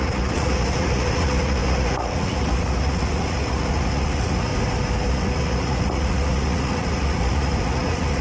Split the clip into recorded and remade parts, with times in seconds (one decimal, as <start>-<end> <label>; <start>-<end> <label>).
0.0-4.5 remade; 4.5-5.1 recorded; 5.1-8.2 remade